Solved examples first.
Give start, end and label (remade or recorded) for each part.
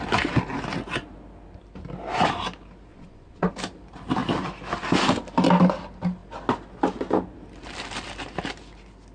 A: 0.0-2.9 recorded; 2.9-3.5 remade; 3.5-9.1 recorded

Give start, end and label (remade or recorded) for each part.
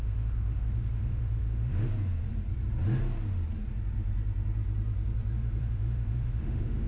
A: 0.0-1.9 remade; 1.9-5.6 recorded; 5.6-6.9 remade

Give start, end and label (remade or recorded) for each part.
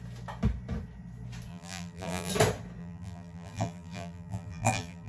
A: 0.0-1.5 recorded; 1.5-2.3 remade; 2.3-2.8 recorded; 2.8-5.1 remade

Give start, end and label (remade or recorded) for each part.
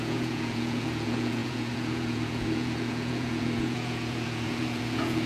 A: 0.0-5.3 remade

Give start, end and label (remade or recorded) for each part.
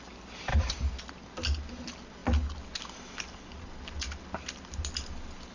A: 0.0-0.5 recorded; 0.5-1.0 remade; 1.0-5.5 recorded